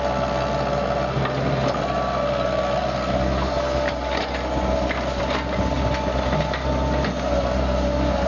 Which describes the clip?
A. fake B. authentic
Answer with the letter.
B